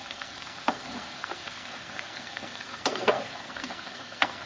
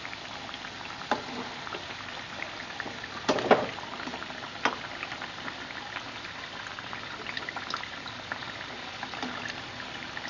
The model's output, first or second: first